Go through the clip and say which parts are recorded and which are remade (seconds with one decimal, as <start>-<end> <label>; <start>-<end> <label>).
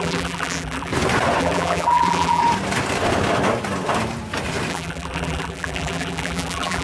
0.0-0.9 remade; 0.9-1.4 recorded; 1.4-2.4 remade; 2.4-4.7 recorded; 4.7-6.8 remade